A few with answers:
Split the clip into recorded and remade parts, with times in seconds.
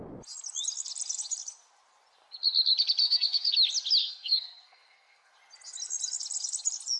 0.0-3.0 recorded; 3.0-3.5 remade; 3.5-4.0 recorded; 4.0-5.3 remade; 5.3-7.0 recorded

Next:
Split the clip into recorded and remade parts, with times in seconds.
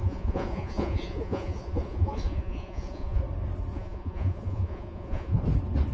0.0-3.2 remade; 3.2-3.7 recorded; 3.7-5.4 remade; 5.4-5.9 recorded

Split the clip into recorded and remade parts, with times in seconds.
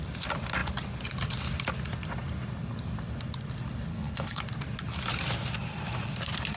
0.0-3.9 recorded; 3.9-4.4 remade; 4.4-6.6 recorded